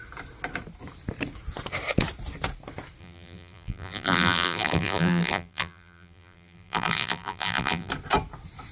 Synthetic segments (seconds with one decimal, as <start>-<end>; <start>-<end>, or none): 3.0-7.9